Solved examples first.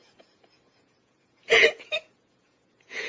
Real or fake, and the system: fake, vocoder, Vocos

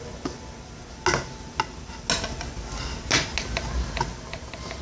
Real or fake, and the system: real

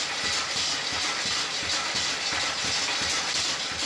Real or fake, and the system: real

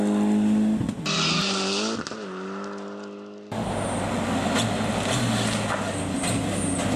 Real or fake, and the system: real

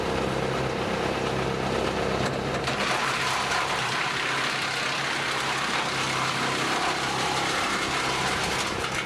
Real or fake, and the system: real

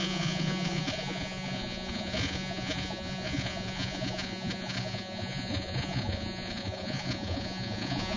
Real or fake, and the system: fake, vocoder, Vocos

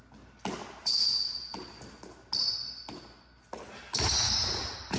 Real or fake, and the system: real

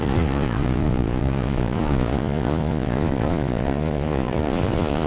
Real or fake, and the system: fake, vocoder, Vocos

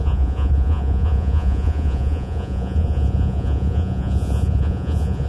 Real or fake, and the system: fake, vocoder, Vocos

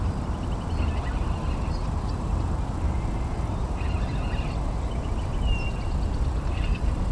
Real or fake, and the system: real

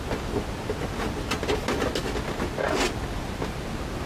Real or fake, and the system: real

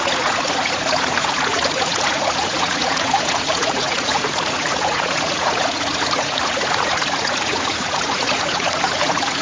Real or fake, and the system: fake, vocoder, Vocos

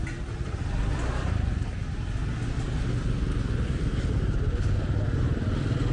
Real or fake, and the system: real